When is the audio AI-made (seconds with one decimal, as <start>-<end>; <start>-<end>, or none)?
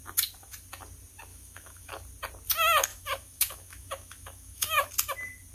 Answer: 1.3-1.9; 2.9-4.9